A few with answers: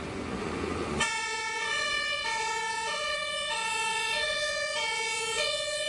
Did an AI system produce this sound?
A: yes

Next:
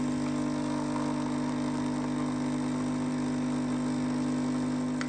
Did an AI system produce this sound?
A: no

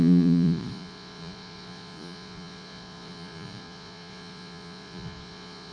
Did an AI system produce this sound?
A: yes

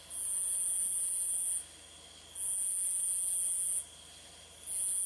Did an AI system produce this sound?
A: no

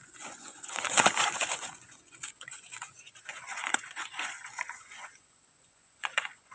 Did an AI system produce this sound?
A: yes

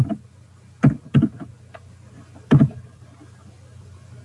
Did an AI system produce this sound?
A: no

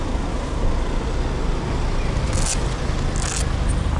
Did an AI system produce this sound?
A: no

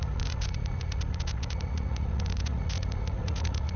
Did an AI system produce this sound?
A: yes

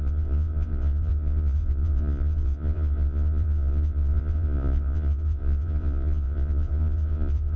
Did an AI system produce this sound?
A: yes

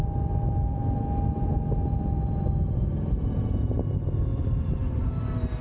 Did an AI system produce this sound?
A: no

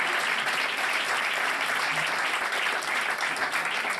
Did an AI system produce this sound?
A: no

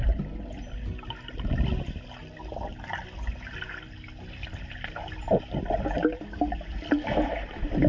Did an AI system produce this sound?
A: no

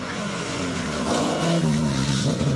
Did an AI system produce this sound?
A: yes